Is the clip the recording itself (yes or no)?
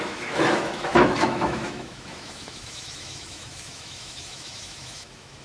no